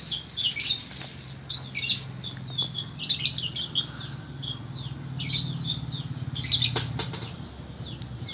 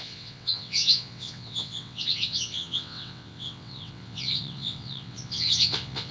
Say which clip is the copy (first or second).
second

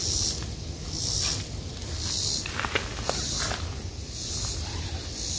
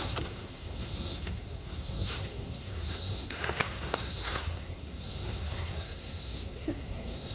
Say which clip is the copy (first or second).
second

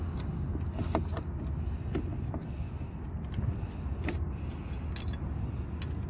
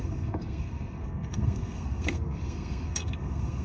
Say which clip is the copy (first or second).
second